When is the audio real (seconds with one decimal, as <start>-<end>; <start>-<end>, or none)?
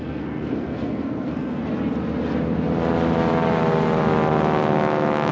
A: 1.7-5.3